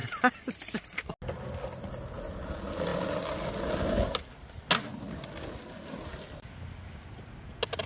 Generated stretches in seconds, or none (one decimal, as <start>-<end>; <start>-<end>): none